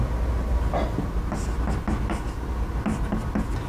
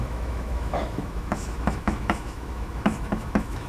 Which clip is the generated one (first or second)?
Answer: second